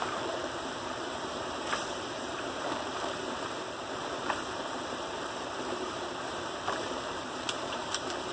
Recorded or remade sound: remade